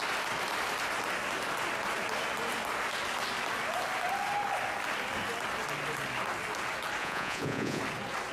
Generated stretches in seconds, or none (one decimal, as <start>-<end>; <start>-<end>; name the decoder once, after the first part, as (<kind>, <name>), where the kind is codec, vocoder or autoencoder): 7.0-7.8 (vocoder, Vocos)